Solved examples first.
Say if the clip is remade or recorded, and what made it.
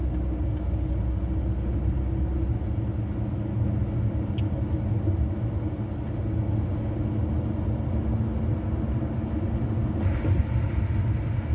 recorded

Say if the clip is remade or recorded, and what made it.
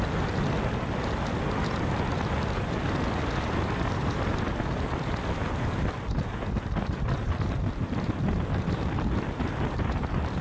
recorded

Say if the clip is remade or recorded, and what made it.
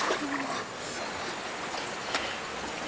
recorded